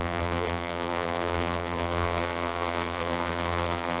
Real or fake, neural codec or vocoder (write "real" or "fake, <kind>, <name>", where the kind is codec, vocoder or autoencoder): fake, vocoder, BigVGAN v2